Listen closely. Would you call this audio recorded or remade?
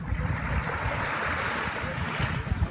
remade